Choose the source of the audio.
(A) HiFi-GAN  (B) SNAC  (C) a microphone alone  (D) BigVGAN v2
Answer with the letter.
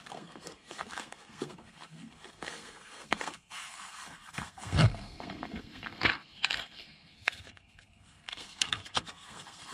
B